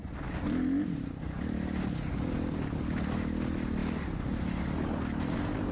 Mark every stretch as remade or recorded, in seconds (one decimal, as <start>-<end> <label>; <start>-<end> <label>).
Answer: 0.0-5.7 recorded